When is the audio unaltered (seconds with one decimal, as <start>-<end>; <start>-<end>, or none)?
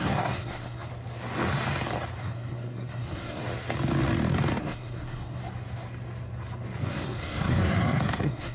0.9-2.2; 3.4-4.6; 5.4-6.8